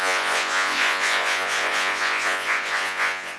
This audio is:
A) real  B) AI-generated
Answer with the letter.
B